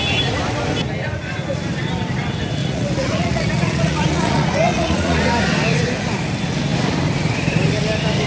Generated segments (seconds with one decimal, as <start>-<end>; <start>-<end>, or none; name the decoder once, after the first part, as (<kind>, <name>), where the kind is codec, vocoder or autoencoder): 2.6-5.2 (vocoder, Vocos)